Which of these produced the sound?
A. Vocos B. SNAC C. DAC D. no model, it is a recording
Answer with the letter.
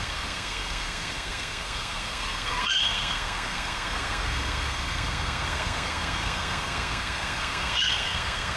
B